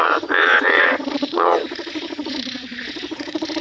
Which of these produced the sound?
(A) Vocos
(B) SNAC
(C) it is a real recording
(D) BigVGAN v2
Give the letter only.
A